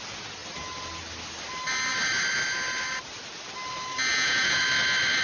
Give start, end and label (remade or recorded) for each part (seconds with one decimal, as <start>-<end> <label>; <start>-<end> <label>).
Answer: 0.0-4.1 recorded; 4.1-4.6 remade; 4.6-5.2 recorded